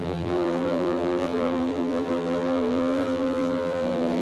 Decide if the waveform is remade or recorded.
remade